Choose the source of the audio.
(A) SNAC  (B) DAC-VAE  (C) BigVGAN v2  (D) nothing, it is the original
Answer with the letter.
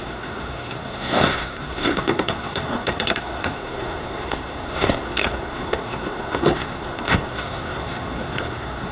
A